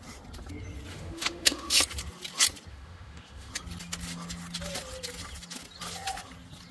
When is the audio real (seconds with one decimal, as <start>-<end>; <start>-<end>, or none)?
0.0-0.9; 1.8-2.7; 3.5-6.7